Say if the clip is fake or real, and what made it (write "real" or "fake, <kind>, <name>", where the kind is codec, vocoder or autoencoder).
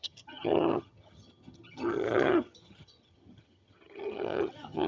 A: fake, vocoder, HiFi-GAN